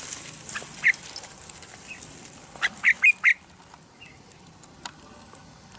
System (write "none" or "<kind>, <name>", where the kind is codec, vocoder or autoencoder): none